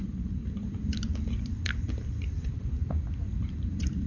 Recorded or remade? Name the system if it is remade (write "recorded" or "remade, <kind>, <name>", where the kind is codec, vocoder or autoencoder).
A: remade, vocoder, BigVGAN v2